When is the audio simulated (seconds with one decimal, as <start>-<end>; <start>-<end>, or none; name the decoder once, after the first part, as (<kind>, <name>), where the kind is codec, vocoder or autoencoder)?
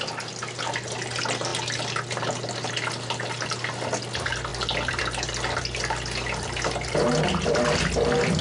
none